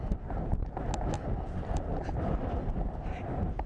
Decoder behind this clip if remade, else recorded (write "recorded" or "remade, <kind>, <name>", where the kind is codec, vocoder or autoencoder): recorded